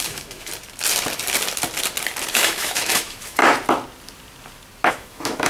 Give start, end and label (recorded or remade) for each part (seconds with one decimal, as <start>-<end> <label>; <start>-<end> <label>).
0.0-0.5 remade; 0.5-2.3 recorded; 2.3-3.4 remade; 3.4-4.9 recorded; 4.9-5.5 remade